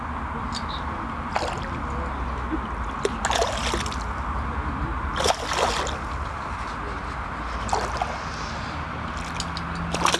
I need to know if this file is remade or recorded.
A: recorded